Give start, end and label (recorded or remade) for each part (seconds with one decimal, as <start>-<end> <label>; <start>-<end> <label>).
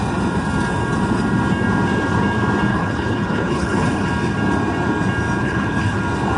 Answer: 0.0-2.7 recorded; 2.7-4.1 remade; 4.1-5.4 recorded; 5.4-6.0 remade; 6.0-6.4 recorded